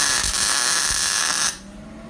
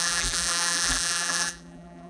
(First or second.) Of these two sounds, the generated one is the second